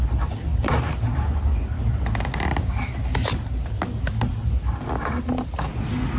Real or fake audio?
real